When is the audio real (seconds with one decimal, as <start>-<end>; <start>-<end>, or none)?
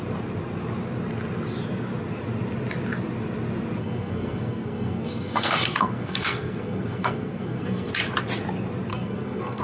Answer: 0.0-3.8; 7.9-8.9